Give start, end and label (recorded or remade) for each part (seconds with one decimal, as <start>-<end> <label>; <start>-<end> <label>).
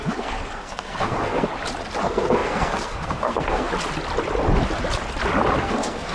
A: 0.0-1.5 remade; 1.5-2.0 recorded; 2.0-3.7 remade; 3.7-5.6 recorded; 5.6-6.1 remade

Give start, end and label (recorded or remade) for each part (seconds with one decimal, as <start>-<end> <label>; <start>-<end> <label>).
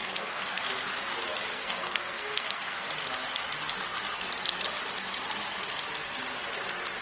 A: 0.0-0.6 remade; 0.6-1.5 recorded; 1.5-2.9 remade; 2.9-7.0 recorded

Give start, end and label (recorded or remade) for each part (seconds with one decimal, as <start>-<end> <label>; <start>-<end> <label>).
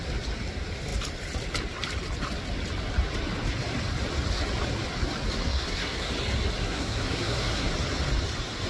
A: 0.0-5.4 recorded; 5.4-6.1 remade; 6.1-6.6 recorded; 6.6-7.7 remade; 7.7-8.7 recorded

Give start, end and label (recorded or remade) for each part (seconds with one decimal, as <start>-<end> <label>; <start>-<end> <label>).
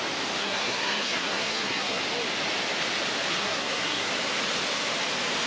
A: 0.0-0.4 recorded; 0.4-2.0 remade; 2.0-3.3 recorded; 3.3-4.1 remade; 4.1-5.5 recorded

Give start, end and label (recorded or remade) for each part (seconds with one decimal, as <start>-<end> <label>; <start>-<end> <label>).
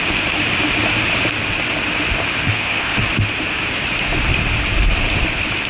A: 0.0-2.5 recorded; 2.5-3.0 remade; 3.0-5.7 recorded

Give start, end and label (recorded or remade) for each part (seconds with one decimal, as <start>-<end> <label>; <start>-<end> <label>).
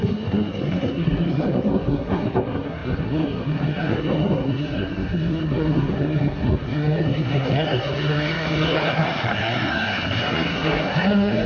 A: 0.0-11.5 remade